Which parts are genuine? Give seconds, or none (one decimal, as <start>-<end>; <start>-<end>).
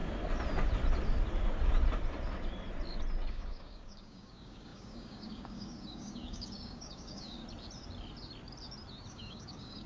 0.0-3.3; 7.4-9.1